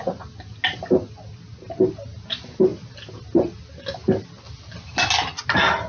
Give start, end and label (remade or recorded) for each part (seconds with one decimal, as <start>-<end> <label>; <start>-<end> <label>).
0.0-5.9 recorded